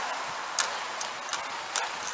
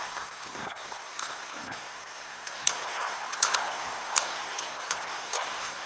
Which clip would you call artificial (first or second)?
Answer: second